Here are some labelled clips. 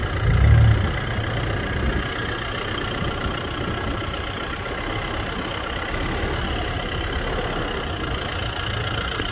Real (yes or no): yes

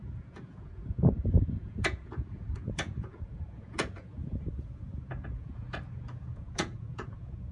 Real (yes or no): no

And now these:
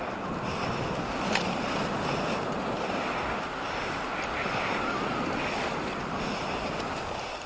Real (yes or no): yes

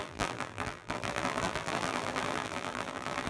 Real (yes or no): no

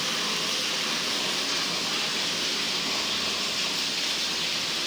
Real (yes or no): no